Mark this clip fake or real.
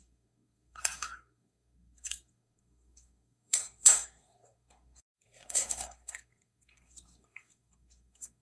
fake